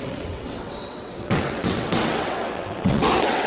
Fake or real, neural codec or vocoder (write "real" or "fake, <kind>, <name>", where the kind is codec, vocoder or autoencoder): fake, vocoder, WaveNeXt